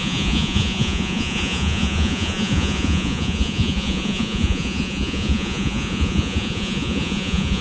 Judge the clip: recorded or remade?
remade